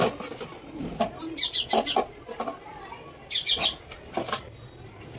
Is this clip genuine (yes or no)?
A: yes